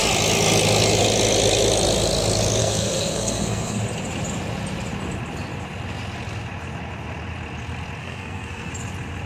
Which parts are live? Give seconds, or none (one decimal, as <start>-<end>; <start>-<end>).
0.0-2.6; 3.8-8.0; 8.7-9.3